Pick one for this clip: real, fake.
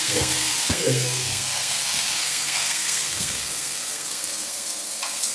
fake